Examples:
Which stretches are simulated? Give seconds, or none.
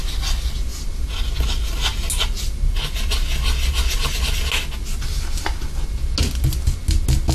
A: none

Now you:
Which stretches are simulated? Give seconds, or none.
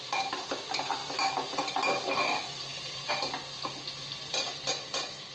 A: none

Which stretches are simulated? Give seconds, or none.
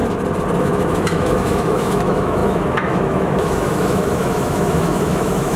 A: 0.6-5.6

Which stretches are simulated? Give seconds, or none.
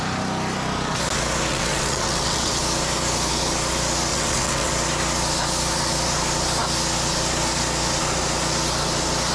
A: 1.5-2.6; 4.1-4.7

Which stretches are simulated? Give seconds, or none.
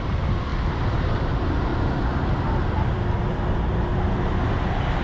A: 0.0-1.7; 2.2-3.9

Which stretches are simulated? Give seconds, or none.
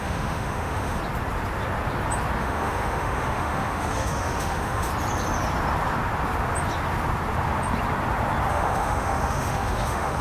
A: 0.0-1.0; 2.4-4.9; 8.5-10.2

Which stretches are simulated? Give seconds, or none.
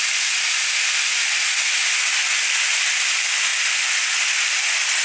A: none